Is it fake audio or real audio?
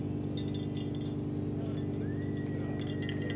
real